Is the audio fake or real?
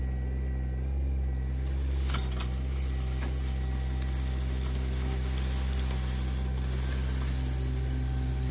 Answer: real